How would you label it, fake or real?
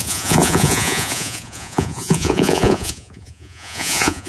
fake